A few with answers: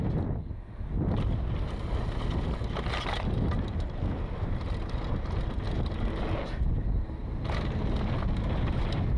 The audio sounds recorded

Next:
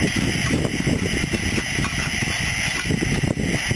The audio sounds recorded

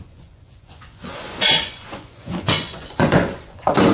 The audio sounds remade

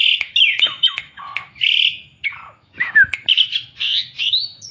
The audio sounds remade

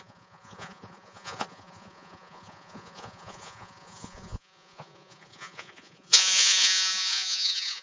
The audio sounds remade